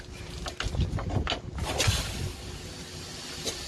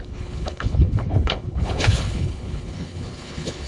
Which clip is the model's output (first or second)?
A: second